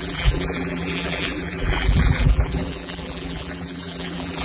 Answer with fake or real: fake